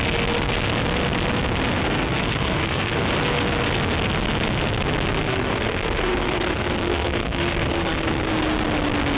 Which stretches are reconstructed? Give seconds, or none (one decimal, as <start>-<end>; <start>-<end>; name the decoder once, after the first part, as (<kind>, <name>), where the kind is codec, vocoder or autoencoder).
1.8-3.0 (codec, SNAC); 5.2-8.3